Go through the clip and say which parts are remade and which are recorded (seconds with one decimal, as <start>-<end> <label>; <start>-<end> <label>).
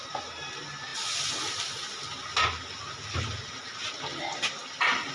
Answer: 0.0-5.1 recorded